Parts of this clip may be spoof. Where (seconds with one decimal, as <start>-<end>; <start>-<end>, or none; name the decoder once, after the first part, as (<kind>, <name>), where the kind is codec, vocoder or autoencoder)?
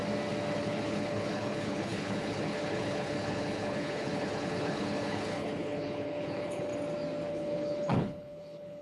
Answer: 0.6-6.7 (codec, HILCodec); 7.3-8.8